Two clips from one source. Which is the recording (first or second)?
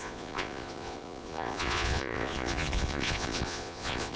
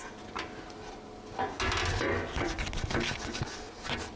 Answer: second